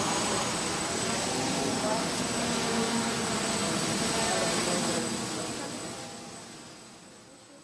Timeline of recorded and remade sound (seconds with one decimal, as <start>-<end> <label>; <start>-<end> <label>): 0.0-7.6 recorded